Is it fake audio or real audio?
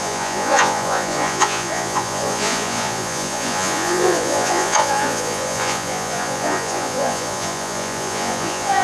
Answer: fake